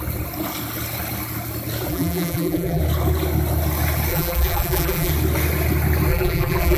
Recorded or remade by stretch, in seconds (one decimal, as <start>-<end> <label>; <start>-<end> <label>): 0.0-1.9 recorded; 1.9-2.8 remade; 2.8-4.1 recorded; 4.1-5.1 remade; 5.1-6.1 recorded; 6.1-6.8 remade